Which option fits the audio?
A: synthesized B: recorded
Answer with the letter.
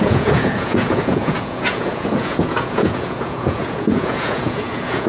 A